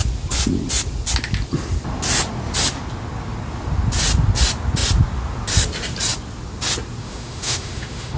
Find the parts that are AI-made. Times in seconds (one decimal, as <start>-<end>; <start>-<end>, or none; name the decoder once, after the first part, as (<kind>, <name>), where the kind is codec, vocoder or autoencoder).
7.0-8.2 (autoencoder, DAC-VAE)